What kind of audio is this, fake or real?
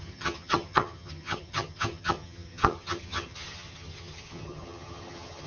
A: fake